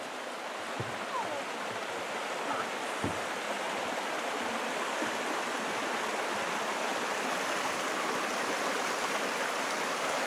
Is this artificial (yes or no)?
no